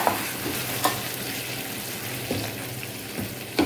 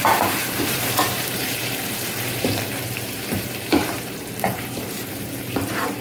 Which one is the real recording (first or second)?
first